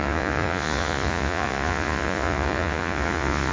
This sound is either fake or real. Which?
fake